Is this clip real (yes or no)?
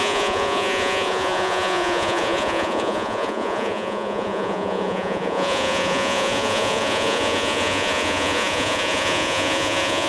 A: no